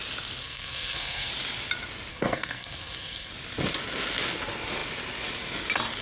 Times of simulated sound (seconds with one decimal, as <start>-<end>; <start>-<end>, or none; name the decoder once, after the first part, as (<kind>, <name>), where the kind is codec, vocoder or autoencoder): 0.4-1.3 (codec, SNAC); 2.1-3.3